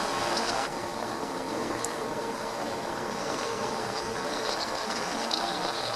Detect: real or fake fake